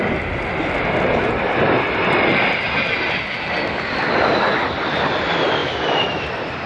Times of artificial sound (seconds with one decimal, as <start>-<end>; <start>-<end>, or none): 5.6-6.2